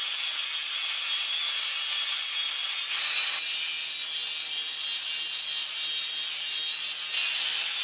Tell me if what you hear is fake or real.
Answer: real